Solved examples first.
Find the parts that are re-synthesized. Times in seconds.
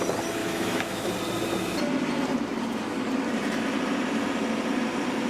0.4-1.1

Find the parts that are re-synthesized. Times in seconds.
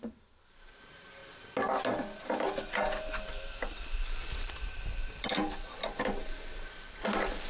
0.0-1.2; 3.3-6.2; 7.0-7.5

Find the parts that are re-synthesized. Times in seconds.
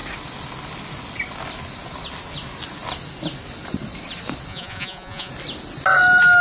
4.5-5.3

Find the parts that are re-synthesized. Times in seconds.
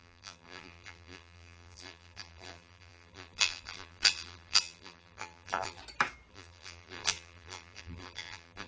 0.0-5.8; 6.3-8.7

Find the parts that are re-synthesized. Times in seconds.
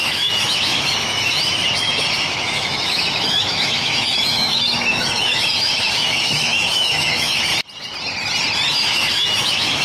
0.0-7.5; 8.7-9.8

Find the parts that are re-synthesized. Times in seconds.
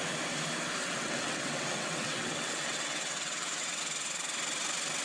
0.8-3.8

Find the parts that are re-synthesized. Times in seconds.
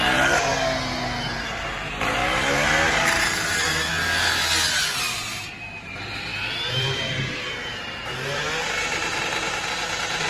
0.0-0.5; 1.4-2.2; 3.2-3.9; 4.7-10.3